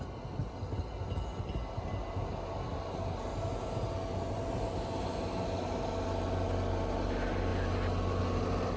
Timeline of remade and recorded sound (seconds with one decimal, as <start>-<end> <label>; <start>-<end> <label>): 0.0-8.8 recorded